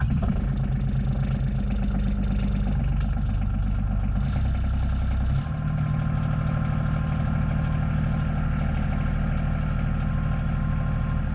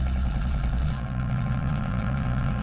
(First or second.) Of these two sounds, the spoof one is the second